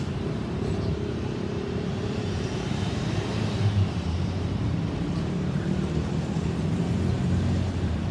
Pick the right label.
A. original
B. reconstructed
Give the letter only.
B